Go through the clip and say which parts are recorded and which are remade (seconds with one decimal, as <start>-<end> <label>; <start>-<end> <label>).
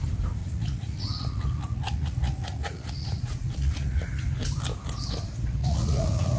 0.0-0.4 recorded; 0.4-4.2 remade; 4.2-5.6 recorded; 5.6-6.4 remade